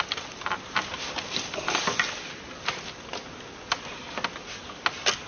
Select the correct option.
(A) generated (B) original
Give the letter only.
B